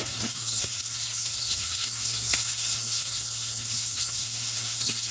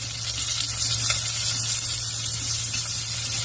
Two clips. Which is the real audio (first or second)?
second